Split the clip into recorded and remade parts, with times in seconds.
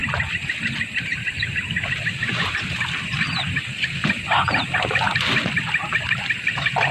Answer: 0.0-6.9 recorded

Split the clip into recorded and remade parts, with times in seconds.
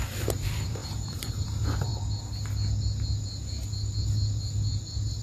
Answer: 0.0-1.9 remade; 1.9-5.2 recorded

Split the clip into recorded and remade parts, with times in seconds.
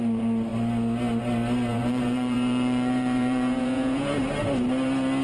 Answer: 0.0-1.7 recorded; 1.7-4.2 remade; 4.2-5.2 recorded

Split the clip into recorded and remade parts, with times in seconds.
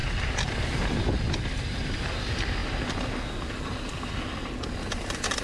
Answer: 0.0-5.4 recorded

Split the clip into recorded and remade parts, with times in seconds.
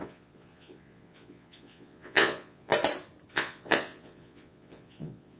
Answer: 0.0-2.7 remade; 2.7-3.3 recorded; 3.3-5.4 remade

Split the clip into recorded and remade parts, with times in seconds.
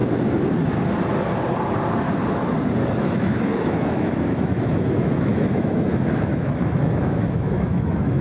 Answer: 0.0-3.0 recorded; 3.0-8.2 remade